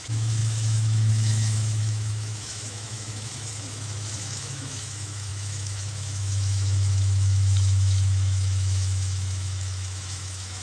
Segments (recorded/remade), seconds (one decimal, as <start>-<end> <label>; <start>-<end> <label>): 0.0-10.6 remade